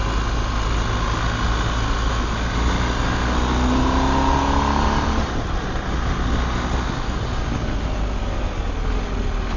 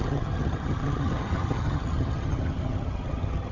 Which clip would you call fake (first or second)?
second